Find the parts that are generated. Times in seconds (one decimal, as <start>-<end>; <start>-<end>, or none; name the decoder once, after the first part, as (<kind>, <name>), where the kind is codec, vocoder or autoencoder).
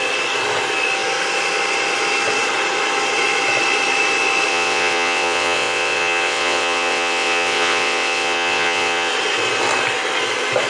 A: 4.5-9.1 (vocoder, WaveNeXt)